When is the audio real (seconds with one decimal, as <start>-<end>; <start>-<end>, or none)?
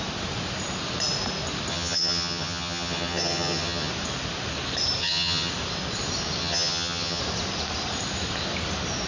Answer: 0.0-1.7; 3.9-5.0; 5.5-6.4; 7.2-9.1